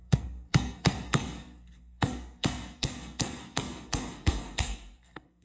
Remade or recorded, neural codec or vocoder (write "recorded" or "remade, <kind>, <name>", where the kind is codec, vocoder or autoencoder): remade, codec, SNAC